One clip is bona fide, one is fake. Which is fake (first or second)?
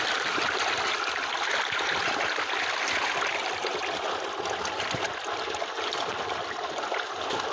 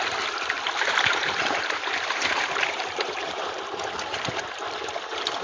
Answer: second